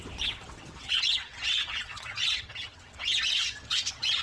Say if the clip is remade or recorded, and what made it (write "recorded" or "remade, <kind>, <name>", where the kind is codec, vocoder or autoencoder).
remade, vocoder, WaveNeXt